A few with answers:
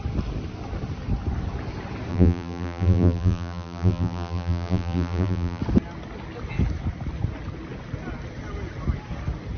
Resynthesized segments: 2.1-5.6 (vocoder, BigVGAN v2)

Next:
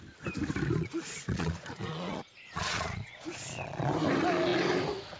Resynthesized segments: 0.8-3.9 (vocoder, Vocos)

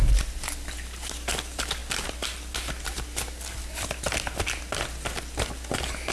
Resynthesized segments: none

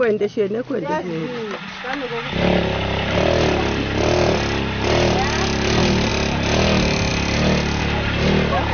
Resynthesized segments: none

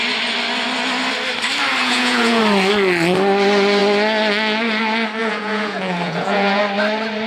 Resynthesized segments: 1.8-2.4 (vocoder, Vocos); 5.2-6.6

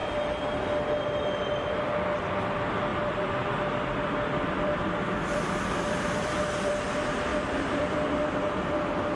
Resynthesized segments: 2.9-6.7 (vocoder, BigVGAN v2); 7.3-8.0